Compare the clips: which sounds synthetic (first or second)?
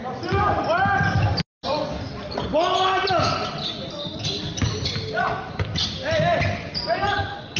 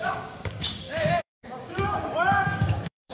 second